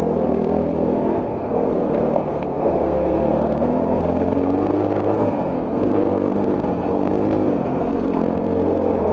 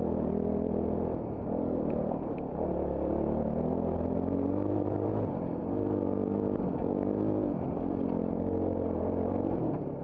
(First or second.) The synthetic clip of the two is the first